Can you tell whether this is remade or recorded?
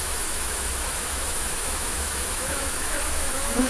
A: remade